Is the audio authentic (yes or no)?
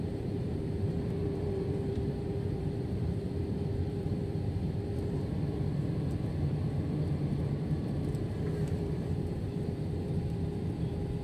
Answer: no